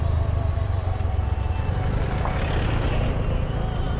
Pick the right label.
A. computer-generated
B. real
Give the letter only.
B